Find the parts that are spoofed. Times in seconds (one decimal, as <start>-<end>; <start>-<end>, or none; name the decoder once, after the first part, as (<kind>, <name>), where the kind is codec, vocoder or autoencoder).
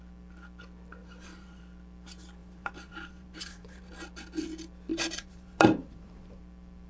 1.0-1.6 (vocoder, BigVGAN v2); 2.4-3.9; 4.9-6.4